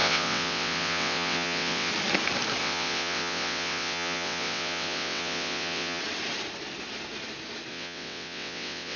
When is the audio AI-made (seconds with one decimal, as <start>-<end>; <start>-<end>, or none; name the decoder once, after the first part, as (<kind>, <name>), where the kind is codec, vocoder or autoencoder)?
0.0-1.9 (vocoder, WaveNeXt); 2.6-6.0; 7.7-9.0